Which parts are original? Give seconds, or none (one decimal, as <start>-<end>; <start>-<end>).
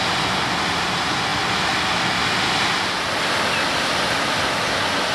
0.0-5.1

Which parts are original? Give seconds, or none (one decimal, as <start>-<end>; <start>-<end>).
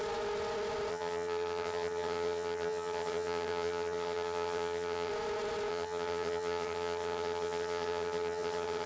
0.0-0.9; 5.1-5.7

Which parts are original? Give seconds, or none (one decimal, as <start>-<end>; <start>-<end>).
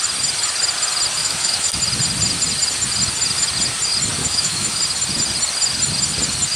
0.0-1.2; 1.8-4.2; 4.8-6.6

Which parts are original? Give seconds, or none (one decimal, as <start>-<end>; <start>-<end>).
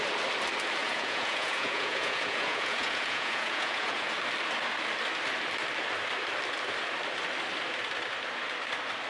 0.0-0.8; 4.1-9.1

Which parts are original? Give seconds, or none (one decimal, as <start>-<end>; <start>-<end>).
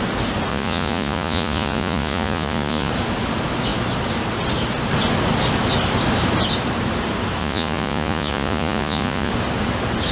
0.0-0.5; 2.9-7.4; 9.3-10.1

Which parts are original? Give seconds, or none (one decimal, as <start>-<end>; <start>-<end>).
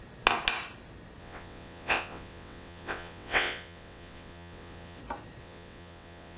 0.0-1.2; 5.0-5.4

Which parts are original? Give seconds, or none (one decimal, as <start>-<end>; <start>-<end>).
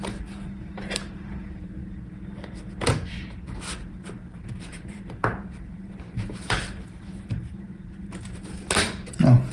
1.8-3.8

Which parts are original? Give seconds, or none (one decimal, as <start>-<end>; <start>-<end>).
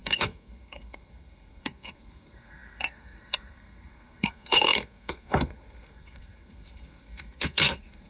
none